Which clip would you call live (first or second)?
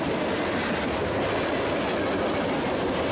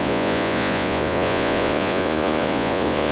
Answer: first